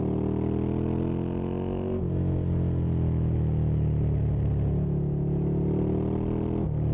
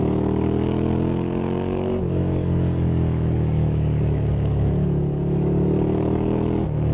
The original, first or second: first